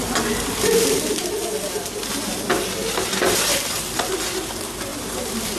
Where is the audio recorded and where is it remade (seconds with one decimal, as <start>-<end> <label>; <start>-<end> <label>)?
0.0-4.9 recorded; 4.9-5.6 remade